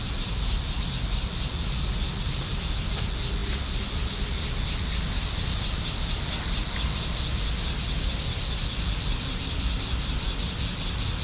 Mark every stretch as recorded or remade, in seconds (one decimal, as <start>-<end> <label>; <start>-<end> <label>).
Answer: 0.0-11.2 recorded